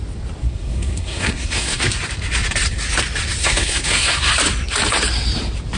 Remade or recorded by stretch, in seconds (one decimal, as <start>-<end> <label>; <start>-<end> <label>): 0.0-0.4 recorded; 0.4-1.8 remade; 1.8-3.4 recorded; 3.4-4.3 remade; 4.3-5.8 recorded